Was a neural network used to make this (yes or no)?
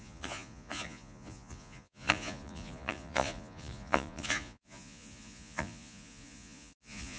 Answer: yes